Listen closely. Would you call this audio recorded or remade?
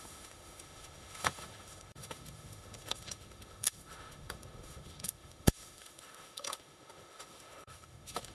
remade